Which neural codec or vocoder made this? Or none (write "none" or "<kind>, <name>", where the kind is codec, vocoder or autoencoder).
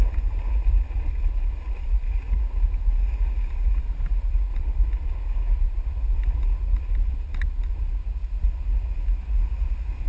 none